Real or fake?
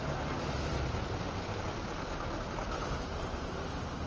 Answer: fake